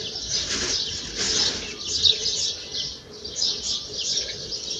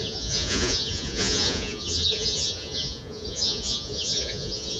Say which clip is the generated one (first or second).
second